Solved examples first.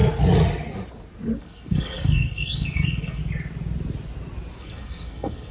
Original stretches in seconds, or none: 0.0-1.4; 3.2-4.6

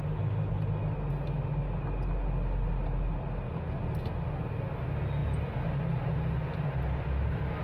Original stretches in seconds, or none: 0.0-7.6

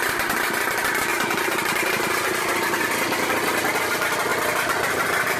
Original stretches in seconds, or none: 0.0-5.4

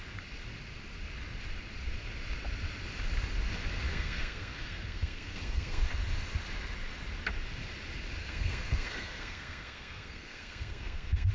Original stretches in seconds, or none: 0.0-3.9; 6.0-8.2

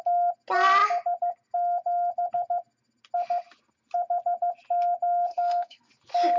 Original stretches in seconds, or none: 0.0-5.3; 5.9-6.4

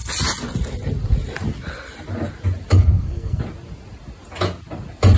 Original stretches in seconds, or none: 0.0-2.7; 3.4-5.2

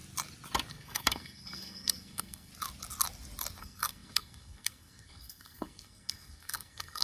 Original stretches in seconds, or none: 0.0-0.7; 2.5-3.6